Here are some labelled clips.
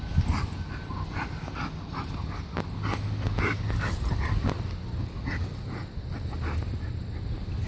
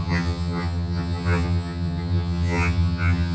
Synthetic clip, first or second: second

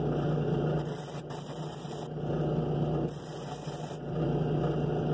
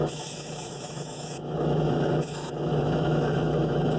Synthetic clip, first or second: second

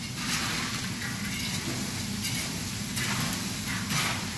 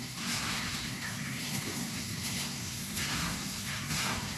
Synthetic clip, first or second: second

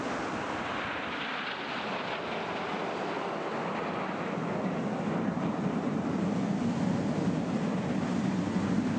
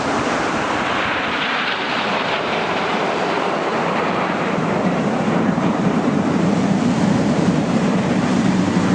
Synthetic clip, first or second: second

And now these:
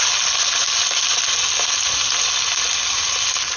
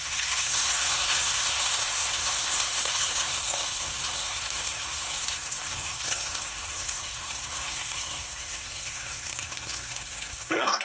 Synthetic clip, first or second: second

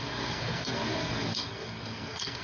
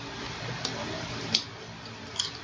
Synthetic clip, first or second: first